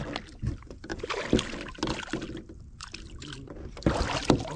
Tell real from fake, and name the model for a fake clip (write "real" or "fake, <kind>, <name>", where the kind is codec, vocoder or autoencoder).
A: real